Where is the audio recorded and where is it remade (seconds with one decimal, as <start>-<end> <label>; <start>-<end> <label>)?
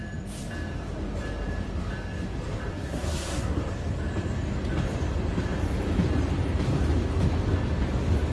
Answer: 0.0-2.7 recorded; 2.7-3.6 remade; 3.6-8.3 recorded